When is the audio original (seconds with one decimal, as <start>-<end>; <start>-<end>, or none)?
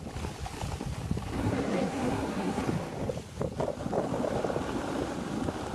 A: 0.0-1.4; 2.6-5.7